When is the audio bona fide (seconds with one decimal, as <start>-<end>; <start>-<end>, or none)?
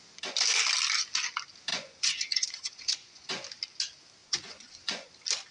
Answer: 0.0-1.7; 3.3-4.2; 5.1-5.5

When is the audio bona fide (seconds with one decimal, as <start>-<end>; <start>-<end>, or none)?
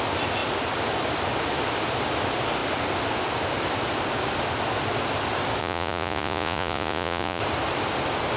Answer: 0.0-5.6; 7.4-8.4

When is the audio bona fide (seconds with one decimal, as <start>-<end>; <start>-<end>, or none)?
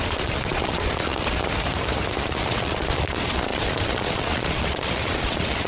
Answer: 1.4-2.2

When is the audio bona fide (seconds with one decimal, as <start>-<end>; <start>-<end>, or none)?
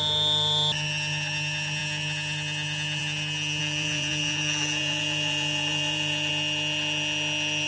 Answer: 0.0-3.6; 6.3-7.7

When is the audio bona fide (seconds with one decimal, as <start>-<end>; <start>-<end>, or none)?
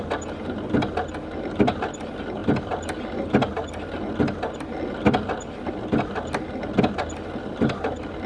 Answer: 0.0-8.3